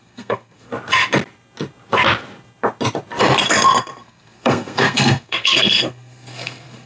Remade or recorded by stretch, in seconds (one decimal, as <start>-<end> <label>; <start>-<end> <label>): 0.0-0.7 remade; 0.7-3.8 recorded; 3.8-6.9 remade